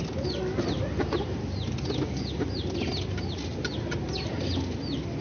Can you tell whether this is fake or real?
real